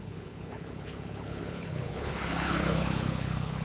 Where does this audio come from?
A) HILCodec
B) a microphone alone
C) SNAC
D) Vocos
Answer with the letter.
A